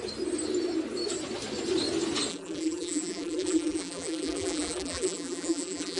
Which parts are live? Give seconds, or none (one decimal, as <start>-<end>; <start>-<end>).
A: 0.0-2.3